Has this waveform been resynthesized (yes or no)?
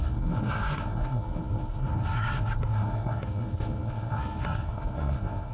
yes